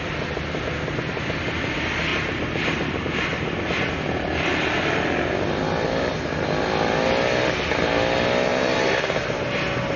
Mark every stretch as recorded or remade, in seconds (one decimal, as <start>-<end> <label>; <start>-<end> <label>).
0.0-2.1 recorded; 2.1-3.9 remade; 3.9-4.5 recorded; 4.5-5.3 remade; 5.3-8.5 recorded; 8.5-9.0 remade; 9.0-10.0 recorded